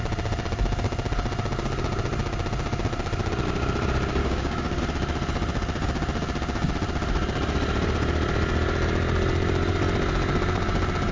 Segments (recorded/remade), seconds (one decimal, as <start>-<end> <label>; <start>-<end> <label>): 0.0-4.2 recorded; 4.2-4.8 remade; 4.8-11.1 recorded